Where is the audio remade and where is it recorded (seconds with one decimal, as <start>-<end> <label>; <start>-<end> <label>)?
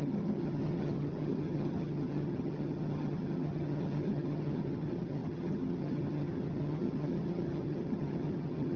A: 0.0-8.8 remade